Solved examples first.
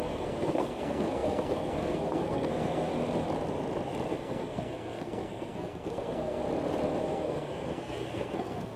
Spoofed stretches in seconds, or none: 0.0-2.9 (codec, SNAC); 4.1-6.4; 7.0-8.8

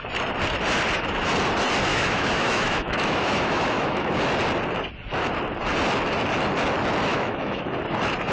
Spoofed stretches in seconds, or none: 1.9-4.1 (autoencoder, DAC-VAE); 7.1-7.7

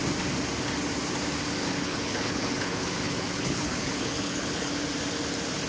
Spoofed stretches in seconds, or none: 1.6-4.7 (codec, HILCodec)

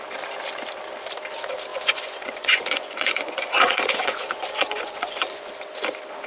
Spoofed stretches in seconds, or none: 1.7-5.5 (vocoder, Vocos)

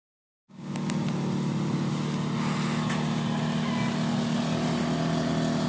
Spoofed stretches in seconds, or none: 0.0-0.7 (codec, DAC)